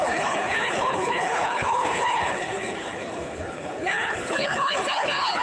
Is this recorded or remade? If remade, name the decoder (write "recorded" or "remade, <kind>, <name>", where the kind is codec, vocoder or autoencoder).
remade, codec, HILCodec